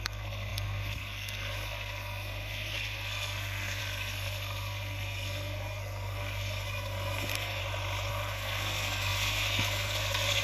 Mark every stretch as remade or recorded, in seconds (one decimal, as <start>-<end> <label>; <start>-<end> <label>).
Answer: 0.0-7.6 remade; 7.6-8.1 recorded; 8.1-10.4 remade